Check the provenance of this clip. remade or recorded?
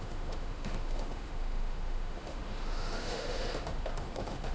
remade